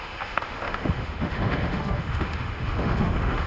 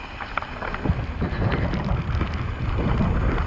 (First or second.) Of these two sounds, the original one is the second